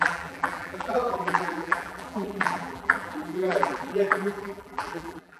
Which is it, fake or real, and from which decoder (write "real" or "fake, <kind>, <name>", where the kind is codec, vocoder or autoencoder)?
fake, vocoder, BigVGAN v2